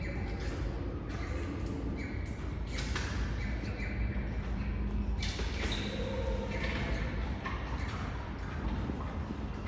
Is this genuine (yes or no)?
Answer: yes